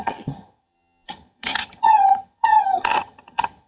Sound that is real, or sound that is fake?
fake